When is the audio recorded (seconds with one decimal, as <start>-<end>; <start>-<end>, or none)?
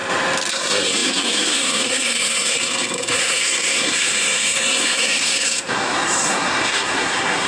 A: 0.0-0.5